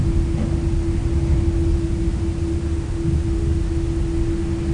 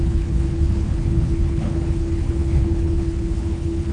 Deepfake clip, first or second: second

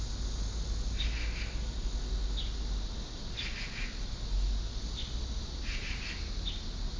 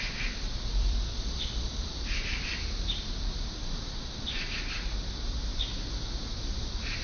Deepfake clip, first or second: second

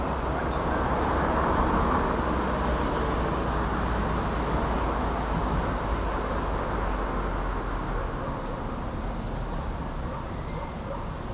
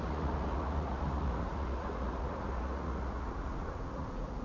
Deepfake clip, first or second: second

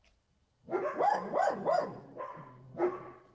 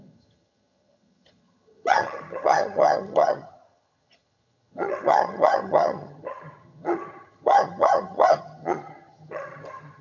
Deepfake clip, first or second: second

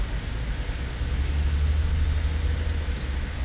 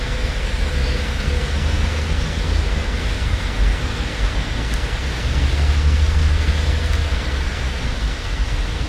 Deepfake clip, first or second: second